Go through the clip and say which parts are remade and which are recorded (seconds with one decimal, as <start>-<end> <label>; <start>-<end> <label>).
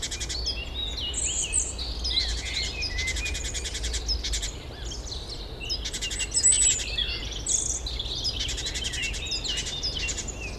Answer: 0.0-10.6 recorded